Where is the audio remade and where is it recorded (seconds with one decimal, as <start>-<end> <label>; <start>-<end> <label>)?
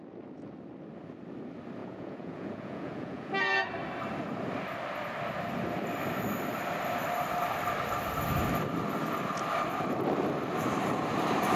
0.0-1.8 recorded; 1.8-3.3 remade; 3.3-11.6 recorded